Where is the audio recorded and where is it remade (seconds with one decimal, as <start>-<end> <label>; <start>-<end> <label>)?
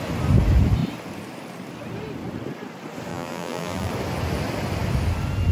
0.0-3.1 recorded; 3.1-3.9 remade; 3.9-5.5 recorded